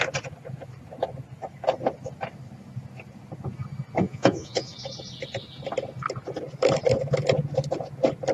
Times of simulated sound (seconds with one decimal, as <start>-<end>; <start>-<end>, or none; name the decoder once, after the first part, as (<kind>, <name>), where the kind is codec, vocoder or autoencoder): 4.0-4.7 (vocoder, Vocos)